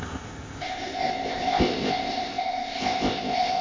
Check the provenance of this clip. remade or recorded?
remade